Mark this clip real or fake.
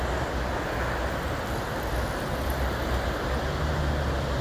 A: real